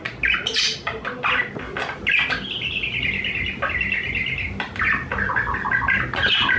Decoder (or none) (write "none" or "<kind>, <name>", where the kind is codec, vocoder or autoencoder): none